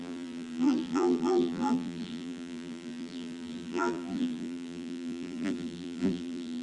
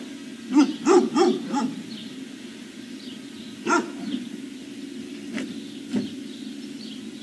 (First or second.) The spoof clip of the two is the first